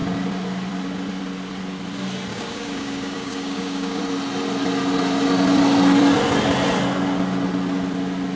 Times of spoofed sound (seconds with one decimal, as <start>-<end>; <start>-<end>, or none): 2.3-4.0